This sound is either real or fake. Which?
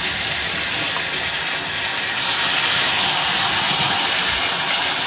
real